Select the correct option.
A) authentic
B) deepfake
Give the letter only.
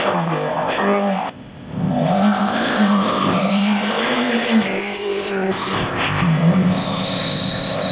B